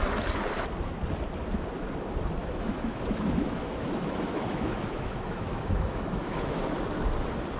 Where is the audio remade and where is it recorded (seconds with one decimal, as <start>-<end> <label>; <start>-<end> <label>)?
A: 0.0-2.4 recorded; 2.4-6.6 remade; 6.6-7.6 recorded